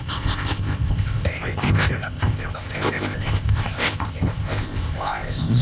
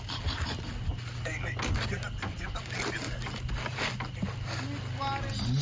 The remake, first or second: first